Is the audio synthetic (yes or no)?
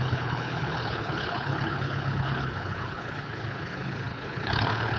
yes